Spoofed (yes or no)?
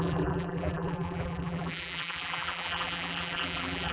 yes